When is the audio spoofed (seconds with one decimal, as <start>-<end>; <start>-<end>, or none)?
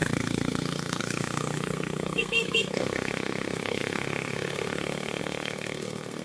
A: 0.0-6.2